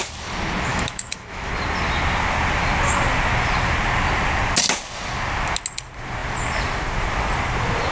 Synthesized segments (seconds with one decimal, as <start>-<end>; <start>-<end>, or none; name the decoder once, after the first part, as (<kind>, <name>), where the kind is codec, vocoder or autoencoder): 0.7-1.5 (autoencoder, DAC-VAE)